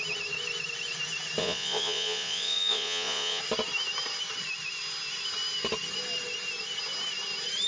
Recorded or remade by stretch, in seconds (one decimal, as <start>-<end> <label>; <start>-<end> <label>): 0.0-1.4 recorded; 1.4-3.4 remade; 3.4-7.7 recorded